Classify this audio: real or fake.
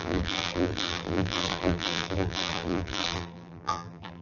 fake